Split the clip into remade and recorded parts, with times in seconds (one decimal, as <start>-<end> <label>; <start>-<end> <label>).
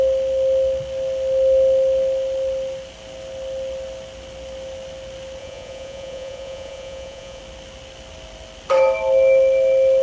0.0-5.4 recorded; 5.4-7.4 remade; 7.4-10.0 recorded